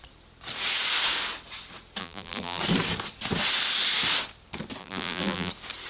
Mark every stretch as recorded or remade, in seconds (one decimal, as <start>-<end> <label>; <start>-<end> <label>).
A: 0.0-2.0 recorded; 2.0-2.6 remade; 2.6-4.8 recorded; 4.8-5.5 remade; 5.5-5.9 recorded